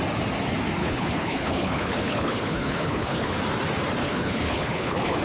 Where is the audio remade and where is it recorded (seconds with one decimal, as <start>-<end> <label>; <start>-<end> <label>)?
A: 0.0-0.8 recorded; 0.8-3.3 remade; 3.3-4.0 recorded; 4.0-5.2 remade